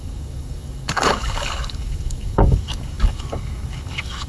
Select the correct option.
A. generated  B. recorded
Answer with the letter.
A